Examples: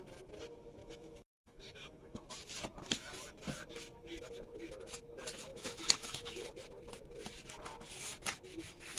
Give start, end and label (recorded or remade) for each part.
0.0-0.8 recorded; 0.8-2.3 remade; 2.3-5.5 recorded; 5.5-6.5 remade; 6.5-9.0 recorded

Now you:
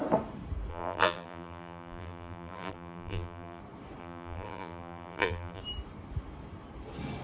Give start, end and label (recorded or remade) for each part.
0.0-0.7 recorded; 0.7-3.6 remade; 3.6-4.0 recorded; 4.0-5.6 remade; 5.6-7.2 recorded

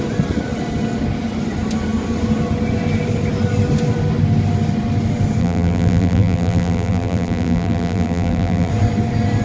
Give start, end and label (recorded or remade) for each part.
0.0-5.4 recorded; 5.4-8.7 remade; 8.7-9.4 recorded

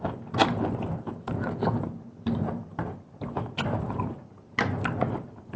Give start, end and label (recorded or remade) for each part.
0.0-5.6 recorded

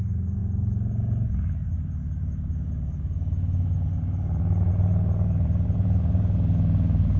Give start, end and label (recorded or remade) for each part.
0.0-7.2 recorded